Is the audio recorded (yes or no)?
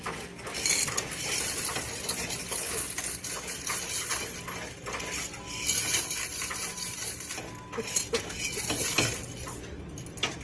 yes